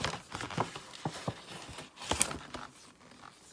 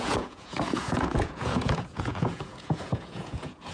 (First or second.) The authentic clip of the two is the first